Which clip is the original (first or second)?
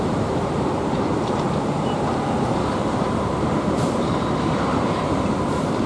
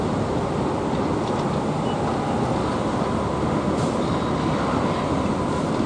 second